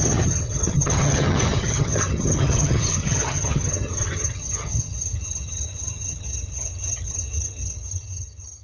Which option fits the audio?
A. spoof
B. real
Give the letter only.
A